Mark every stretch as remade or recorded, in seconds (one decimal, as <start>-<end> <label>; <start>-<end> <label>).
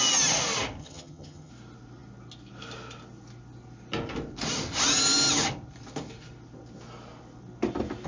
0.0-0.8 recorded; 0.8-1.5 remade; 1.5-8.1 recorded